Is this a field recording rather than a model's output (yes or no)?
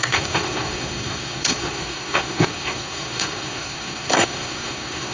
no